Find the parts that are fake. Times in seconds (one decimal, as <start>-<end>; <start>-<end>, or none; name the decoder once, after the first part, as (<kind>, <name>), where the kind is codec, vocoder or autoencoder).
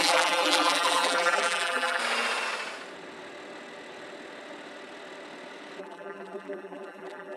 0.0-2.0 (vocoder, BigVGAN v2); 5.8-7.4